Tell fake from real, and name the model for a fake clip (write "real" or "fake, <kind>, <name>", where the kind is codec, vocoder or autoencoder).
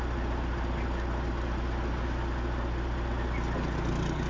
real